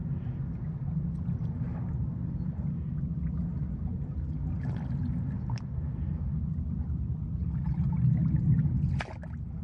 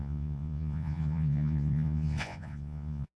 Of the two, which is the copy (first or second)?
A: second